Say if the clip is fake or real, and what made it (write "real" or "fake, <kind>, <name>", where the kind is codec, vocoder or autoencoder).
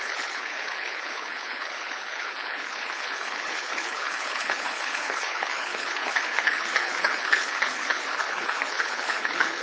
fake, codec, HILCodec